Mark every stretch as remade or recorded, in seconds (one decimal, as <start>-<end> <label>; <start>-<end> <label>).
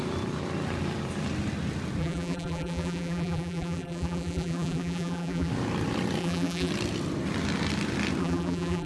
0.0-2.0 recorded; 2.0-5.5 remade; 5.5-6.2 recorded; 6.2-6.7 remade; 6.7-8.2 recorded; 8.2-8.9 remade